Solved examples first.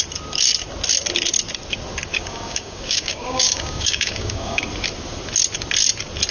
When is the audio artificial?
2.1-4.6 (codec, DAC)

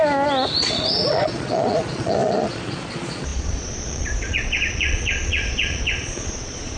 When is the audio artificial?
0.6-6.8 (vocoder, Vocos)

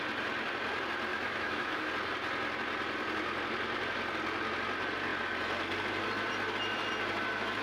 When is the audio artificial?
1.1-1.9 (autoencoder, DAC-VAE)

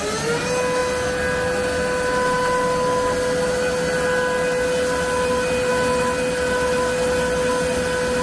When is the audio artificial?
none

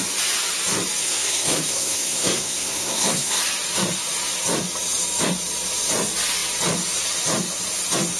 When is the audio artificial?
1.0-3.4 (codec, SNAC)

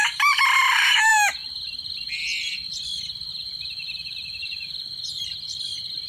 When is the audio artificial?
3.3-5.2 (vocoder, BigVGAN v2)

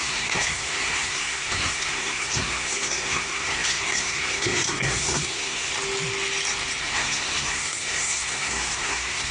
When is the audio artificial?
0.0-5.7 (codec, SNAC); 6.8-9.3